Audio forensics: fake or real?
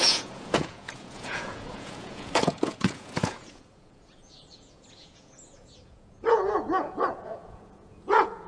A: fake